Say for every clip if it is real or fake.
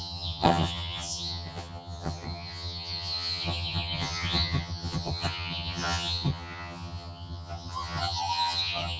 fake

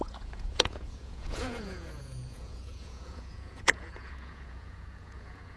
fake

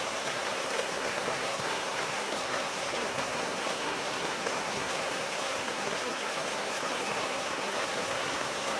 fake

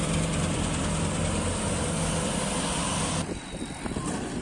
fake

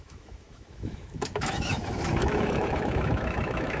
fake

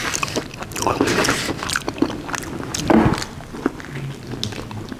real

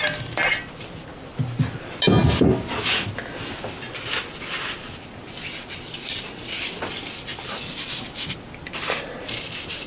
real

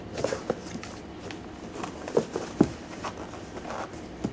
real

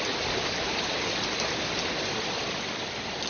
real